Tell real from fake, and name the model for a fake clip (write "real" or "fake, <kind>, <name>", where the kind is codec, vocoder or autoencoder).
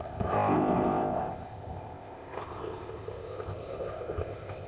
fake, codec, ZipCodec